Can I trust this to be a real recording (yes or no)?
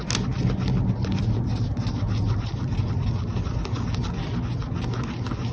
yes